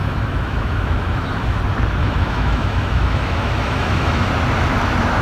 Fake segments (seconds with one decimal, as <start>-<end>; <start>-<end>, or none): 0.0-1.6; 2.0-4.3